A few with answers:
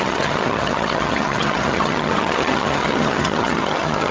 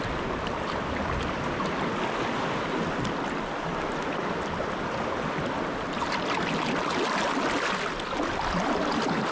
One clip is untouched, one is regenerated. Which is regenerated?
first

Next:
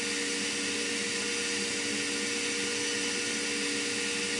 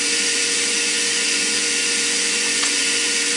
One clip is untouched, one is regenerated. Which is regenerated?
second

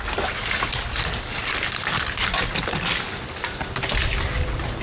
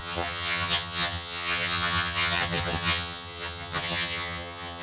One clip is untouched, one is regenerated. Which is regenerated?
second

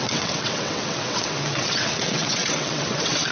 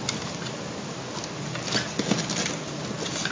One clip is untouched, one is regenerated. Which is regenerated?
first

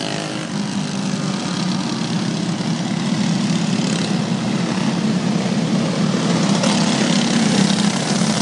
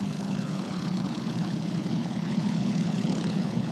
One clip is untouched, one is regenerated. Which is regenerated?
second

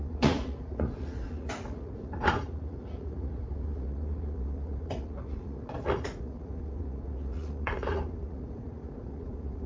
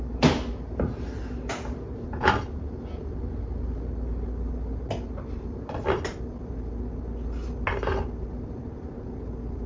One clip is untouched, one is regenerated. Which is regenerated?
first